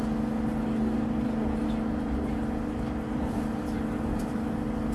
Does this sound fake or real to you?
real